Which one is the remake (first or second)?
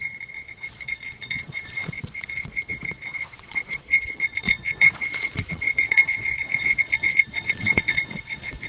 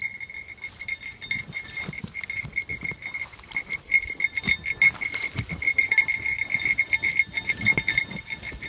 first